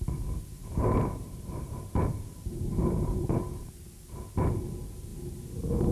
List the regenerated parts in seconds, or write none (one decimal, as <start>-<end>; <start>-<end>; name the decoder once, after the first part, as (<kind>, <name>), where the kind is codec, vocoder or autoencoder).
0.6-3.4 (vocoder, BigVGAN v2)